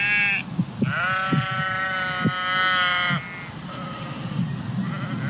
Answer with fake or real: real